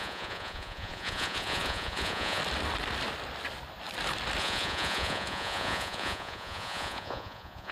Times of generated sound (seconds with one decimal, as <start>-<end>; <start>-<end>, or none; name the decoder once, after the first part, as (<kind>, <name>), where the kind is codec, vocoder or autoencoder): 0.0-2.4 (vocoder, Vocos); 4.4-7.7